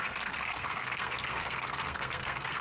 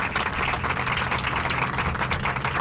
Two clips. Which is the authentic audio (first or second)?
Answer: second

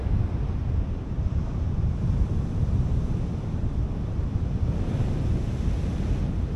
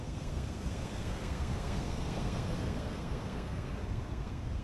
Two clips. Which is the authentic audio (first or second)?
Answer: first